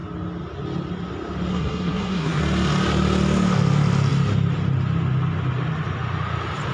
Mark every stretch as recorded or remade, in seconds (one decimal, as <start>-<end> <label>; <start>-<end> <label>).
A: 0.0-1.5 recorded; 1.5-2.4 remade; 2.4-6.7 recorded